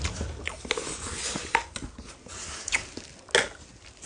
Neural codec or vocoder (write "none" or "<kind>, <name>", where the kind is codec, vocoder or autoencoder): none